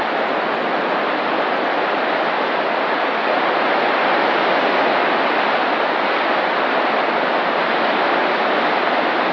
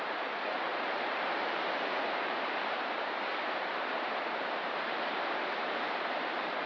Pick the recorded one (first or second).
first